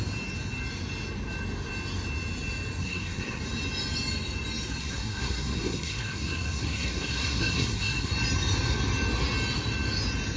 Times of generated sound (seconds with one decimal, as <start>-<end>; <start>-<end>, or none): 2.8-3.4; 4.8-8.1